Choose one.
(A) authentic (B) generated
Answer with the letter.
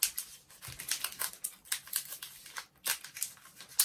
A